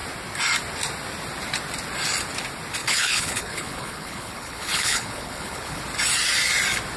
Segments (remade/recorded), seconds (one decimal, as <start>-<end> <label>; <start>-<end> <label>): 0.0-2.8 recorded; 2.8-5.8 remade; 5.8-7.0 recorded